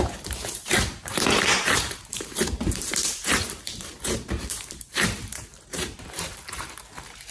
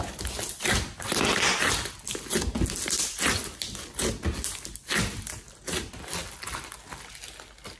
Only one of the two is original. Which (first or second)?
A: second